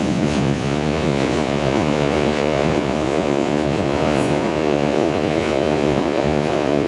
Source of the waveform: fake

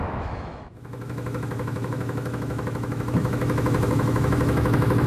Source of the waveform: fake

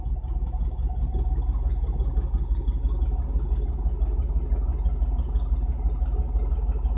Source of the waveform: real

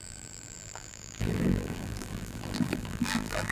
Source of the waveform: fake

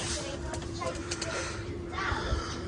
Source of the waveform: fake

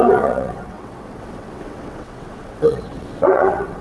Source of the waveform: fake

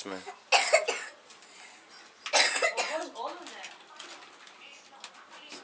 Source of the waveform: real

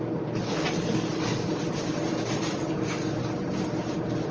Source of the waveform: real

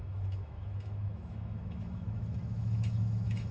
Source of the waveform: fake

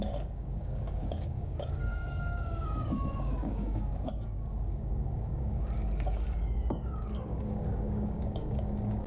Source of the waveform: fake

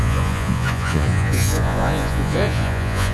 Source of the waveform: fake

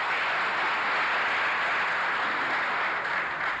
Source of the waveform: real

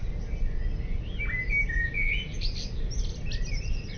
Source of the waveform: real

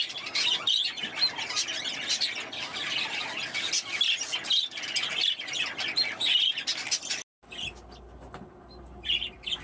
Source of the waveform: real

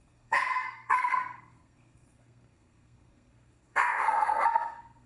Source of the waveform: fake